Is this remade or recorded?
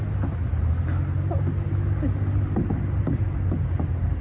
recorded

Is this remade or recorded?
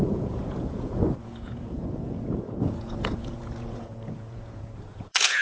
remade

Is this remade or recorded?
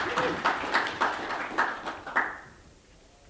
recorded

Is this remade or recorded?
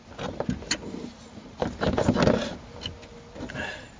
recorded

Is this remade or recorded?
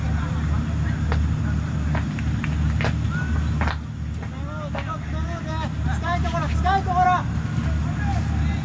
recorded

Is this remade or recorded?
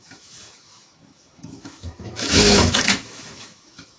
remade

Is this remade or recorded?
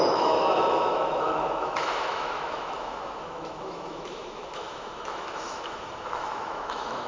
remade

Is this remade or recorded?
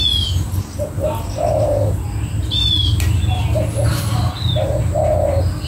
recorded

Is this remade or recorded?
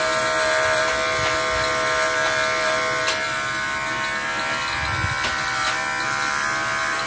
recorded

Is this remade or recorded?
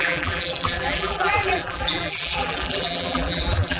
remade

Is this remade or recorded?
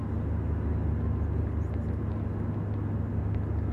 recorded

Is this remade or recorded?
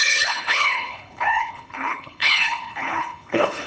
remade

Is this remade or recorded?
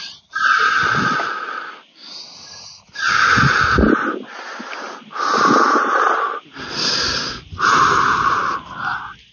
recorded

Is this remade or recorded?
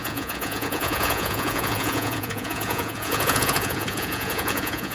remade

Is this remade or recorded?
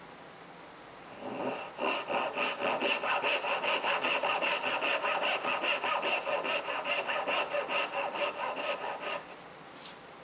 recorded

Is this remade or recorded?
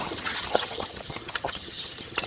remade